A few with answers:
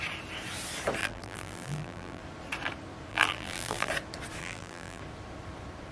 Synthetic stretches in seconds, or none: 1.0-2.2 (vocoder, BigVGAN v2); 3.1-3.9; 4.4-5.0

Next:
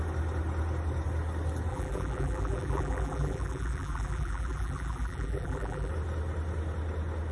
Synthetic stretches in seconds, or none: 1.7-5.9 (vocoder, BigVGAN v2)

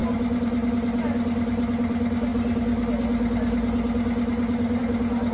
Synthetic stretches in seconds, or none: 0.0-0.7 (vocoder, BigVGAN v2)

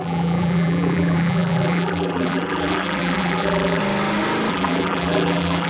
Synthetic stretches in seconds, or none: 0.0-3.8 (vocoder, BigVGAN v2); 4.5-5.7

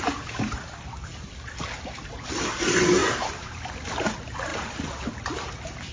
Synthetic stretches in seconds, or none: 3.0-3.6 (vocoder, BigVGAN v2)

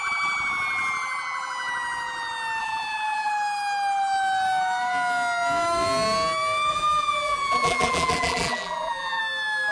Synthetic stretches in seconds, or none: 2.6-3.3 (vocoder, BigVGAN v2); 6.7-9.2